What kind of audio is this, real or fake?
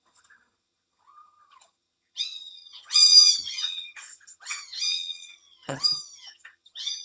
fake